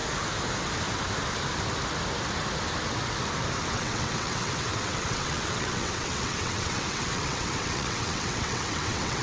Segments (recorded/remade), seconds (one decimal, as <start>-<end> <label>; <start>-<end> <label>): 0.0-3.7 recorded; 3.7-9.2 remade